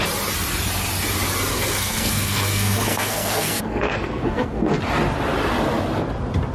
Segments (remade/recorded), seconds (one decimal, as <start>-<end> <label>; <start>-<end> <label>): 0.0-1.5 recorded; 1.5-4.8 remade; 4.8-6.5 recorded